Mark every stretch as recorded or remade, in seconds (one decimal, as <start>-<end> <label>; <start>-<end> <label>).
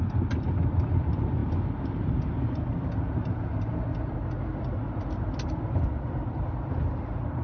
0.0-7.4 recorded